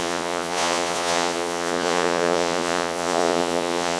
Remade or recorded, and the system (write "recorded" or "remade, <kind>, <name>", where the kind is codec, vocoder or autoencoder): remade, vocoder, Vocos